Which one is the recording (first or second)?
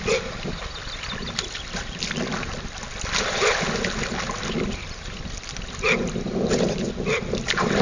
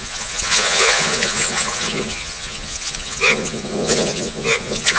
first